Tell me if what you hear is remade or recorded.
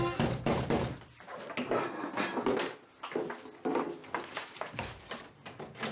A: recorded